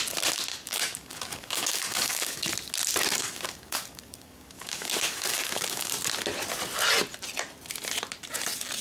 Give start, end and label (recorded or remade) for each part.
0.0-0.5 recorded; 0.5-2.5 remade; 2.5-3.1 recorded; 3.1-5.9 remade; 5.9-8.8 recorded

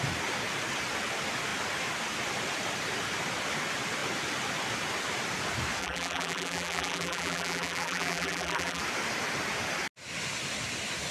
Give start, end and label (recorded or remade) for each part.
0.0-5.8 recorded; 5.8-8.8 remade; 8.8-11.1 recorded

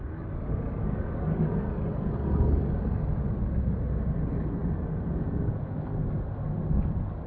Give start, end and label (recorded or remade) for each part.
0.0-4.6 recorded; 4.6-5.6 remade; 5.6-7.3 recorded

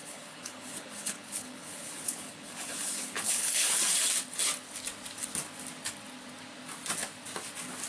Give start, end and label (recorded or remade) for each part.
0.0-3.8 remade; 3.8-7.9 recorded

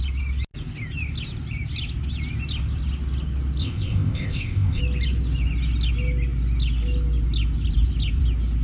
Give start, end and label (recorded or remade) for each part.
0.0-3.6 recorded; 3.6-4.8 remade; 4.8-8.6 recorded

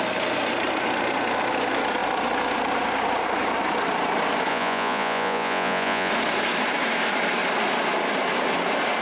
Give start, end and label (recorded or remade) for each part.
0.0-4.5 recorded; 4.5-6.1 remade; 6.1-9.0 recorded

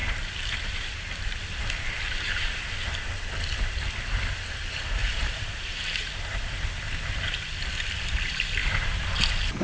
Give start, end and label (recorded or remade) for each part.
0.0-1.4 remade; 1.4-5.0 recorded; 5.0-6.6 remade; 6.6-9.6 recorded

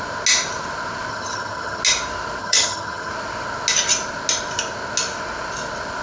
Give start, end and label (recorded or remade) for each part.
0.0-1.1 recorded; 1.1-1.8 remade; 1.8-2.4 recorded; 2.4-3.1 remade; 3.1-6.0 recorded